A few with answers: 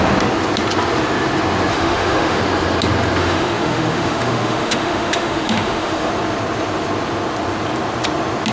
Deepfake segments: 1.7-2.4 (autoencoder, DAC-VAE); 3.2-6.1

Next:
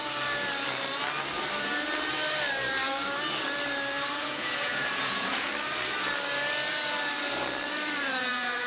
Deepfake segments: 4.2-5.5 (vocoder, Vocos); 8.2-8.7